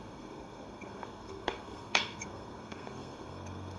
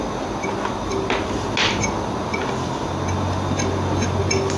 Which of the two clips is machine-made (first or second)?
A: first